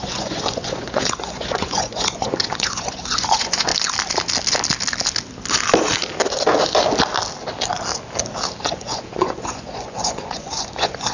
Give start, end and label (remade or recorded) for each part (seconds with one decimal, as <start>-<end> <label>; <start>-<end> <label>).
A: 0.0-3.7 remade; 3.7-8.6 recorded; 8.6-11.1 remade